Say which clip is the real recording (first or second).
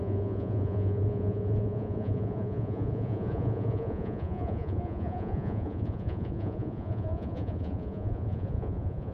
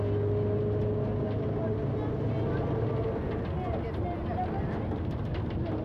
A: second